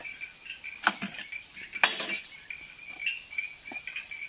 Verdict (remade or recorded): recorded